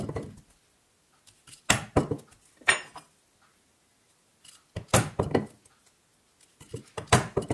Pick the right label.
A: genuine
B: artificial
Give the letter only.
A